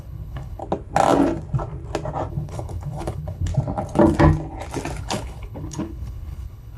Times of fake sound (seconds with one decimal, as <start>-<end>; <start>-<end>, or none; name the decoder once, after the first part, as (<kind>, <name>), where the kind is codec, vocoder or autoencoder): 0.0-0.6 (codec, HILCodec); 2.3-3.5; 5.0-6.8